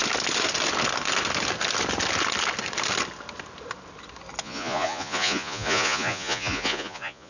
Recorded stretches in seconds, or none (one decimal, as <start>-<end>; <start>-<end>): 0.0-4.4